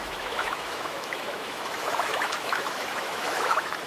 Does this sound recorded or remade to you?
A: remade